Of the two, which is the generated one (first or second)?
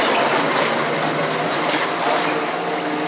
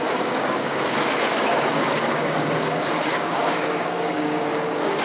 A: second